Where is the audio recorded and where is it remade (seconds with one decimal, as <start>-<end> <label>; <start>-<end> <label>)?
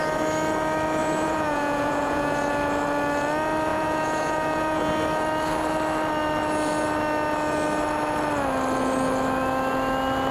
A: 0.0-1.0 recorded; 1.0-2.5 remade; 2.5-3.7 recorded; 3.7-4.9 remade; 4.9-10.3 recorded